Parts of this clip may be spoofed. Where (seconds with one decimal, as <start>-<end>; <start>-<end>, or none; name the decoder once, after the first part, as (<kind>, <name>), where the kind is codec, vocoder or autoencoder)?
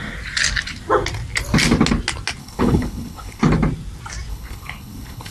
2.4-3.4 (codec, HILCodec); 4.3-5.3